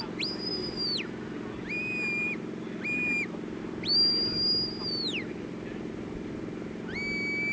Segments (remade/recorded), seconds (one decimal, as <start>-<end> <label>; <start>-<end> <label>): 0.0-7.5 recorded